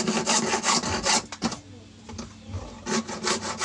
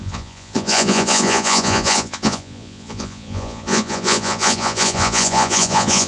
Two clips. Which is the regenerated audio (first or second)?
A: second